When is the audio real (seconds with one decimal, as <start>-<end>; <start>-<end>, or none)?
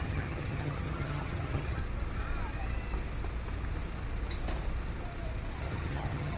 1.8-5.6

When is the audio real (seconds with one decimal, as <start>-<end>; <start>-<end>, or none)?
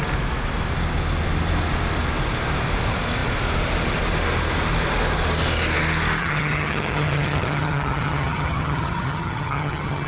0.0-6.2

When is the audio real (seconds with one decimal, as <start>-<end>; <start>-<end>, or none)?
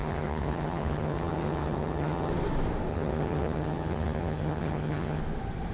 2.3-2.9; 5.2-5.7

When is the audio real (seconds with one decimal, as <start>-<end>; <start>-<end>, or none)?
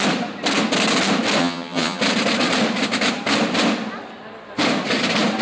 0.0-1.4; 2.0-5.4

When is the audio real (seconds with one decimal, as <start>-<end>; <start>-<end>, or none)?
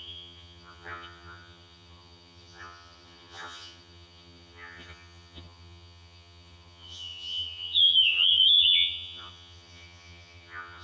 none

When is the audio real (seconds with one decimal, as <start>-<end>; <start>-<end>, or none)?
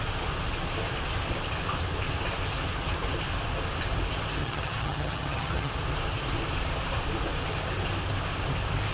0.0-4.4; 5.7-8.9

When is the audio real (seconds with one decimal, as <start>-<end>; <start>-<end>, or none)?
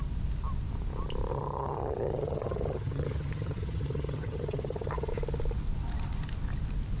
0.0-1.3; 5.1-7.0